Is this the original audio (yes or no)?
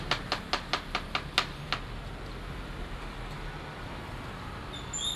yes